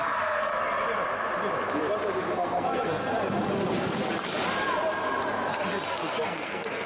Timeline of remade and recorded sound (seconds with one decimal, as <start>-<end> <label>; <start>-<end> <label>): 0.0-0.5 remade; 0.5-2.3 recorded; 2.3-3.0 remade; 3.0-5.9 recorded; 5.9-6.9 remade